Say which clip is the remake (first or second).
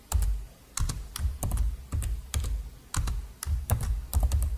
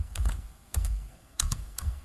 second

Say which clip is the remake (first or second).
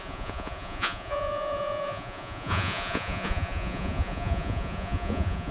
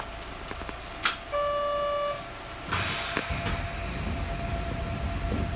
first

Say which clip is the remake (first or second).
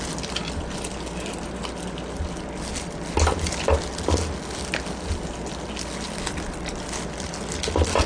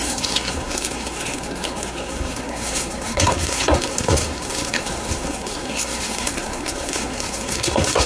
second